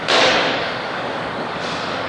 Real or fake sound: fake